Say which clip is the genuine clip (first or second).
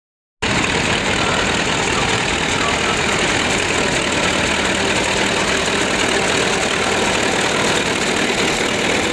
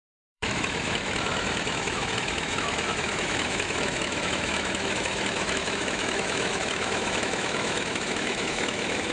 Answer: first